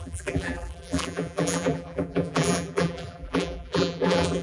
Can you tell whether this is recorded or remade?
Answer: remade